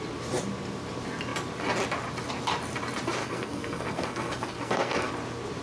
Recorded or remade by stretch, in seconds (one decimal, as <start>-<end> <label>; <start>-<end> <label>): 0.0-3.2 recorded; 3.2-5.1 remade; 5.1-5.6 recorded